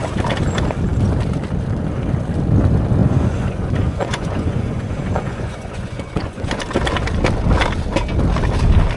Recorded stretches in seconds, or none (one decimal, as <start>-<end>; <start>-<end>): 0.0-3.0; 6.6-9.0